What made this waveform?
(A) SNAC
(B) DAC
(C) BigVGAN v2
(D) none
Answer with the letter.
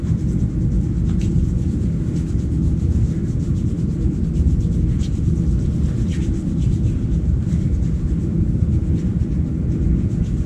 D